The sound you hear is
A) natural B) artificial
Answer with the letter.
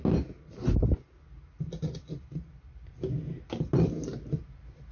A